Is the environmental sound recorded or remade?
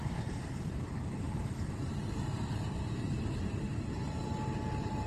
remade